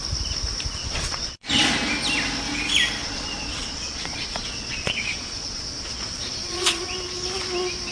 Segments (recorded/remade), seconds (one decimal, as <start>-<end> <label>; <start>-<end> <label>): 0.0-0.8 recorded; 0.8-1.5 remade; 1.5-3.0 recorded; 3.0-6.9 remade; 6.9-7.9 recorded